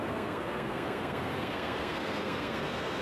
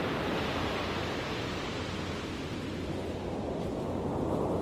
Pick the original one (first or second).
second